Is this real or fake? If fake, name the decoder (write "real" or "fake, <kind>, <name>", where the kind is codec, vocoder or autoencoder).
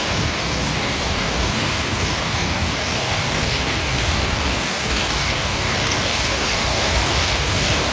fake, codec, DAC